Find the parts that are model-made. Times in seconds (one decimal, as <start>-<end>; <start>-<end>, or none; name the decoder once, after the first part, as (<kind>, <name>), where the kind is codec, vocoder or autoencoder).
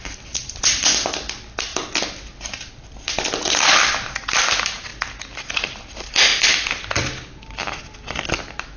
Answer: none